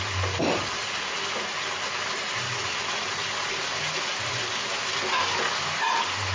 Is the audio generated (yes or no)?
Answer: no